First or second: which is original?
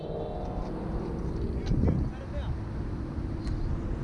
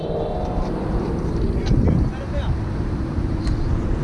first